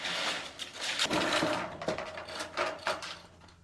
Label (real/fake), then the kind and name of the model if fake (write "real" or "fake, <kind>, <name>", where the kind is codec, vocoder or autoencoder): real